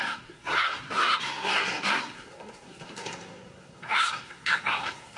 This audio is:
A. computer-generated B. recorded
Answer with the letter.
A